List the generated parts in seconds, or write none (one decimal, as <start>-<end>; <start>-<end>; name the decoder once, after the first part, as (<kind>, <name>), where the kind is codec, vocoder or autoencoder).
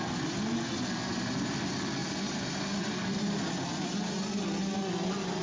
none